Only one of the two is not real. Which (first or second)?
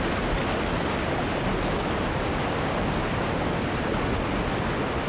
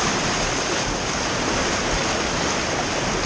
second